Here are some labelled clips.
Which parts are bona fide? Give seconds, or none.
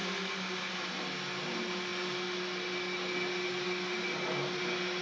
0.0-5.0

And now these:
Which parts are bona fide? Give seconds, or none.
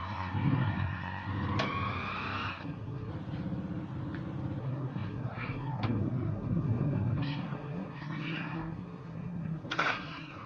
1.3-2.5; 3.1-4.6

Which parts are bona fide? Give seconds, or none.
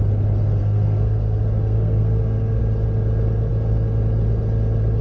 0.0-0.6; 2.6-5.0